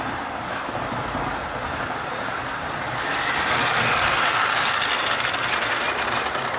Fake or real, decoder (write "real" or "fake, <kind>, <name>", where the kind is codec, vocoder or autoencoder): real